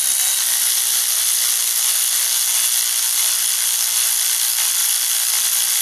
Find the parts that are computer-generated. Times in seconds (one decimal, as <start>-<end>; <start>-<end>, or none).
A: none